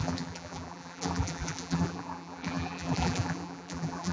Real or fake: fake